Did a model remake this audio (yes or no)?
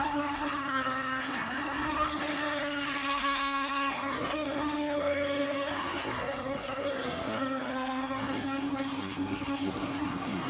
yes